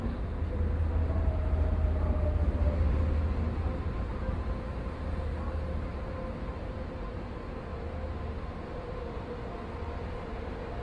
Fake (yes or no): no